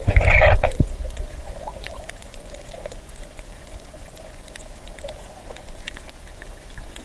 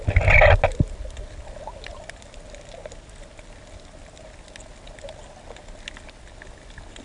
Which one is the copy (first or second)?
first